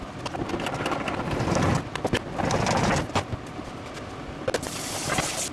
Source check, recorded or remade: recorded